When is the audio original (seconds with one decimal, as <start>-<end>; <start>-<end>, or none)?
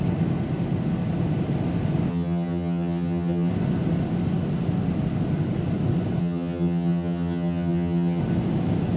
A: 0.0-2.1; 3.5-6.2; 8.2-9.0